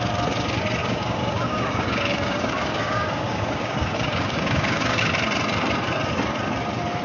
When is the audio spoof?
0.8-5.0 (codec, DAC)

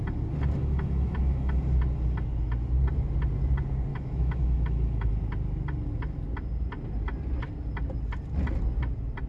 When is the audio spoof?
0.6-1.6 (autoencoder, DAC-VAE); 3.9-5.1

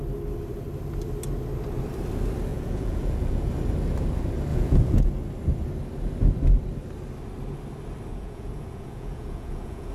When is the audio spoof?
2.5-3.5 (vocoder, Vocos); 4.5-5.1; 8.1-9.9